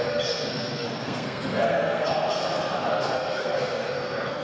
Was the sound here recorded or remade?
remade